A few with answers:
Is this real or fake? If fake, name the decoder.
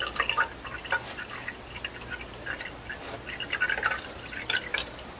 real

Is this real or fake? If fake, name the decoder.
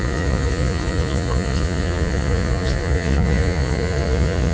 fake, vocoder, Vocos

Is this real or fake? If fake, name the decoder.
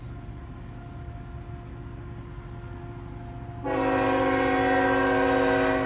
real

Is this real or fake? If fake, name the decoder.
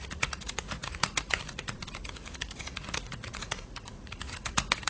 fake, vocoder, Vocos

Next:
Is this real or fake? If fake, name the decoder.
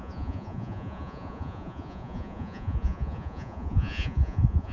fake, vocoder, Vocos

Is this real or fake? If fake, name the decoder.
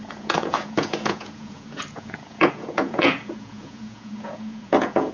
fake, vocoder, Vocos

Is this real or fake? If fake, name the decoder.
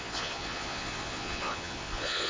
fake, vocoder, Vocos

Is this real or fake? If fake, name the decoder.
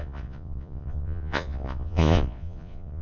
fake, vocoder, Vocos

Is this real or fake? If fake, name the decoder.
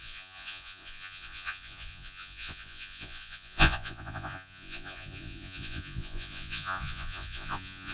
fake, vocoder, Vocos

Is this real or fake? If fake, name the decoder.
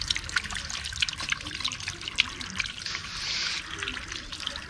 real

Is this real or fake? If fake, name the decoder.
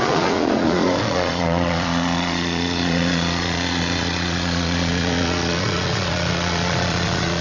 fake, vocoder, Vocos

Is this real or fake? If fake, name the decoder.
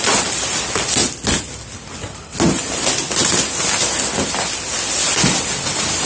real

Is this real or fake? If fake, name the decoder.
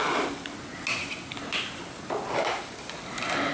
real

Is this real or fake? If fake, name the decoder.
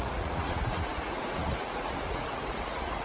fake, vocoder, Vocos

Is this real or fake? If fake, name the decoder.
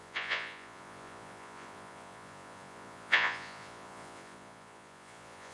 fake, vocoder, Vocos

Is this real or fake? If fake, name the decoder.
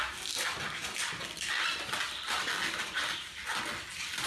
real